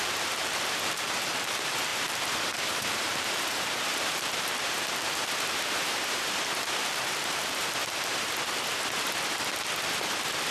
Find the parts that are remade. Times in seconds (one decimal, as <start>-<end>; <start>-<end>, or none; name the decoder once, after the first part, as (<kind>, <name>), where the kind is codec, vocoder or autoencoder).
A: 0.0-7.8 (vocoder, BigVGAN v2); 9.9-10.5